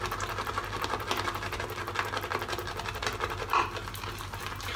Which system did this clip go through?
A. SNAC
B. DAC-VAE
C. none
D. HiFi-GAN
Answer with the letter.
C